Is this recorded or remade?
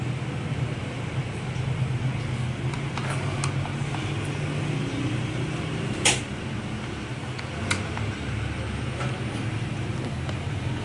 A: recorded